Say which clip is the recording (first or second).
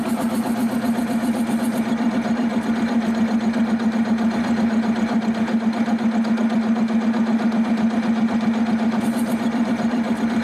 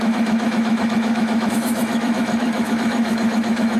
first